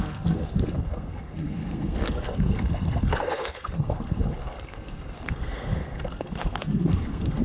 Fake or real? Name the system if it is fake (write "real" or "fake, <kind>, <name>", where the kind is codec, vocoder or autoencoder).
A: fake, codec, SNAC